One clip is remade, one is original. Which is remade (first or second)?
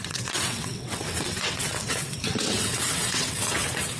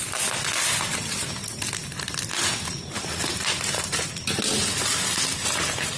first